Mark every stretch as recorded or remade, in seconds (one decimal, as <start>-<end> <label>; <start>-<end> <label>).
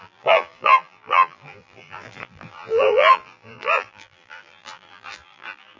0.0-5.8 remade